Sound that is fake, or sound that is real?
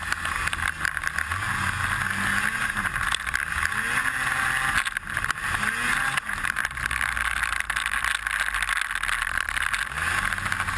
real